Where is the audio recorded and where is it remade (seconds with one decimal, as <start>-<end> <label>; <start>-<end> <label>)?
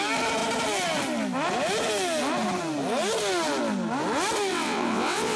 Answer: 0.0-4.5 recorded; 4.5-5.4 remade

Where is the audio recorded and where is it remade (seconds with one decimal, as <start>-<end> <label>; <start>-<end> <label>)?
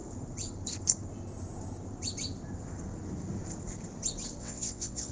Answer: 0.0-4.4 recorded; 4.4-5.1 remade